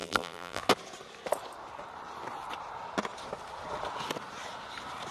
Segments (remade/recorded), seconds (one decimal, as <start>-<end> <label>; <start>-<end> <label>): 0.0-0.6 remade; 0.6-5.1 recorded